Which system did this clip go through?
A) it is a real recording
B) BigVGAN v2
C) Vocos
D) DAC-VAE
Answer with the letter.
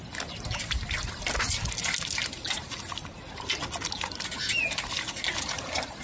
A